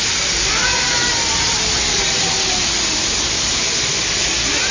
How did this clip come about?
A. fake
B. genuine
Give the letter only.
B